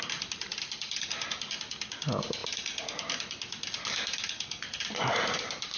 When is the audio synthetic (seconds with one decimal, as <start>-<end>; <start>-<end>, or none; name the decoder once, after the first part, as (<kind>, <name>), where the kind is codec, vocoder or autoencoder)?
none